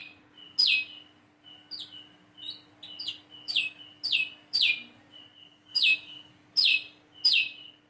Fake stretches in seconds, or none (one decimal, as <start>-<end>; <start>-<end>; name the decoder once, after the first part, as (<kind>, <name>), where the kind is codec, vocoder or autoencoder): 5.5-6.3 (autoencoder, DAC-VAE)